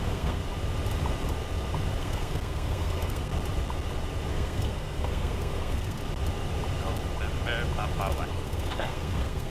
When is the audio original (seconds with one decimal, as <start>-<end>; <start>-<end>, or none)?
0.4-2.0; 3.3-4.3; 6.0-8.3